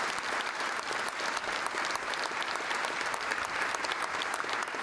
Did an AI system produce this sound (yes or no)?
yes